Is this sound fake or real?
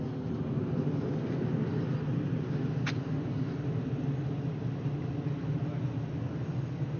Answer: real